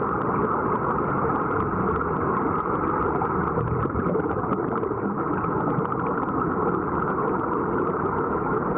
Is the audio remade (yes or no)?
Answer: yes